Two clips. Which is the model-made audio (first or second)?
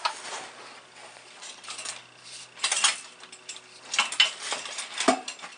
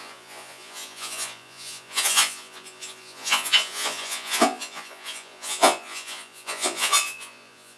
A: second